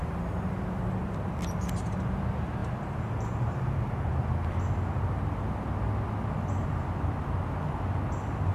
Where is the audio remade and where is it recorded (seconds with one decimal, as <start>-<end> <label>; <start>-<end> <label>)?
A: 0.0-8.5 recorded